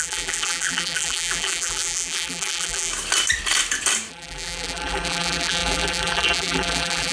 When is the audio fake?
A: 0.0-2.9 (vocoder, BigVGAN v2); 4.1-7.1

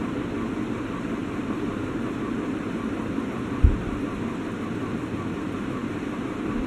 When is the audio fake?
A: none